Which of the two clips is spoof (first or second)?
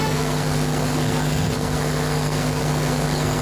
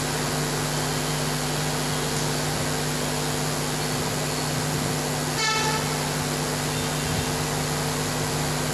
first